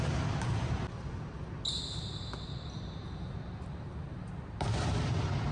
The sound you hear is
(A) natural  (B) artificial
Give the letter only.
A